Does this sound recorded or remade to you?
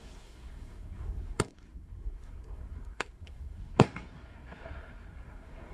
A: remade